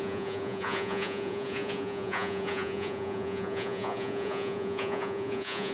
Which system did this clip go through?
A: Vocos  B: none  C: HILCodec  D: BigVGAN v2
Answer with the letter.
A